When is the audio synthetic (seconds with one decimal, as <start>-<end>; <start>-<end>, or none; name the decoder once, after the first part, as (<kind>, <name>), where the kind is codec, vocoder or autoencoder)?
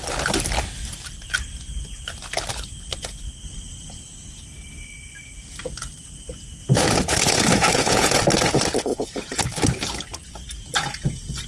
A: 6.6-8.2 (vocoder, Vocos); 8.9-9.4